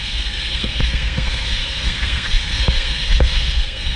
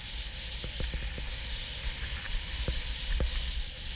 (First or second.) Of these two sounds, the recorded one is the second